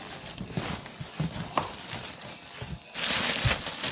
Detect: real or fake real